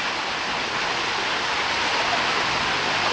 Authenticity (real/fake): real